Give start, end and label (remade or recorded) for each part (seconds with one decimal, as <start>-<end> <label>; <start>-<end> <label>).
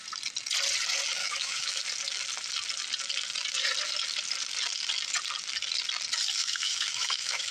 0.0-1.2 recorded; 1.2-1.8 remade; 1.8-6.4 recorded; 6.4-7.5 remade